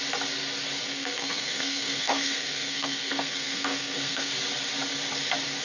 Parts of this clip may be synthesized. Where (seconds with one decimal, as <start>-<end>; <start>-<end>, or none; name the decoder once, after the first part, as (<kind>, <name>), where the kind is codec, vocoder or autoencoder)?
0.9-4.3 (codec, SNAC)